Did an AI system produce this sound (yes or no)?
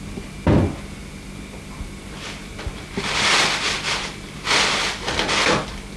no